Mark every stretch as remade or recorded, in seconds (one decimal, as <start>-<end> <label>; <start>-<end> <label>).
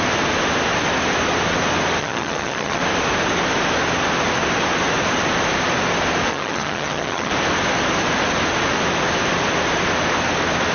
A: 0.0-2.0 recorded; 2.0-2.8 remade; 2.8-6.3 recorded; 6.3-7.3 remade; 7.3-10.7 recorded